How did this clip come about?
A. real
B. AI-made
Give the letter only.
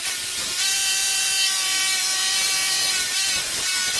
B